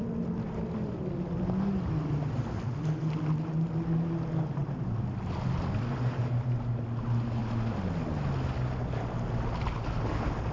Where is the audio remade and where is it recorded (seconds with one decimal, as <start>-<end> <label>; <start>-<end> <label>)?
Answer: 0.0-10.5 recorded